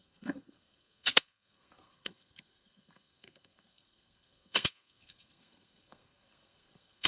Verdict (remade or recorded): remade